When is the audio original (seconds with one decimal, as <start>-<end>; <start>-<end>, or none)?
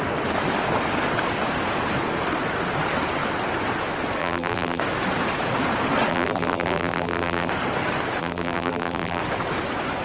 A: 0.0-4.2; 4.8-6.1; 7.5-8.2; 9.2-10.0